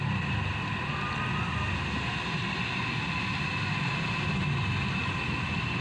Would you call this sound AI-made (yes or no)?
no